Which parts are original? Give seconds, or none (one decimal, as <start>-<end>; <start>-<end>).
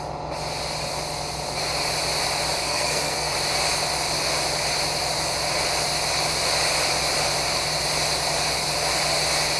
0.0-2.6; 3.3-9.6